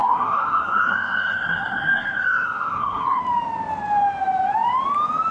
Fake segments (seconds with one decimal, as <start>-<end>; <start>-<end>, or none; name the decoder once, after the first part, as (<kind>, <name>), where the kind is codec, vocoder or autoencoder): 0.0-3.2 (codec, SNAC)